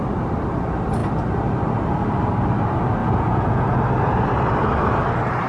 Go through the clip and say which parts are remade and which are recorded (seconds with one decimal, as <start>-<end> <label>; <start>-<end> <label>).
0.0-3.0 recorded; 3.0-3.8 remade; 3.8-5.5 recorded